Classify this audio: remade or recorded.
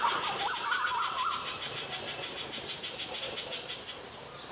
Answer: recorded